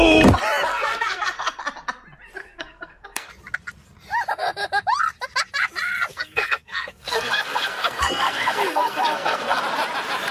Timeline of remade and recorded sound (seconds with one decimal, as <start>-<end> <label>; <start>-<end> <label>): 0.0-0.7 recorded; 0.7-1.6 remade; 1.6-2.4 recorded; 2.4-3.3 remade; 3.3-6.1 recorded; 6.1-9.6 remade; 9.6-10.3 recorded